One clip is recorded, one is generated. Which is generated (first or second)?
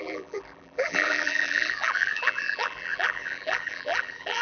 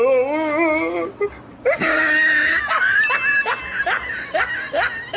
first